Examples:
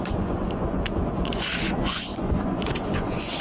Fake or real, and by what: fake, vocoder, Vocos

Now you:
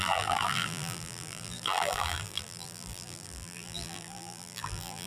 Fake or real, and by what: fake, vocoder, BigVGAN v2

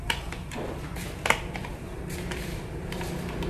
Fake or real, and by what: fake, vocoder, BigVGAN v2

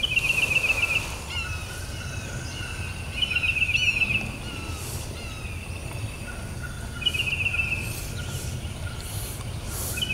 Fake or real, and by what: real